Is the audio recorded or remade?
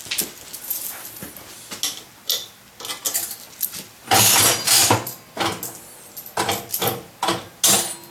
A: recorded